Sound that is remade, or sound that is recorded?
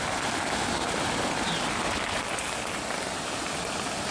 recorded